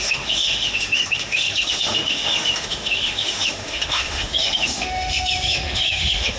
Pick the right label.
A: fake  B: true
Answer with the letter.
A